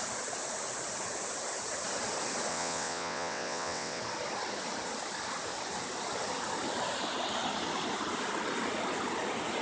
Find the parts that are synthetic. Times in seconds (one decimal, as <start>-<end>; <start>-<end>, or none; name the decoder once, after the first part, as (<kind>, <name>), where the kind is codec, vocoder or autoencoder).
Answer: 2.5-4.0 (vocoder, WaveNeXt)